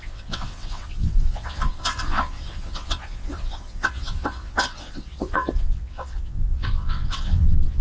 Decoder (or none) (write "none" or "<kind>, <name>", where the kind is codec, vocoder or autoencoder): vocoder, WaveNeXt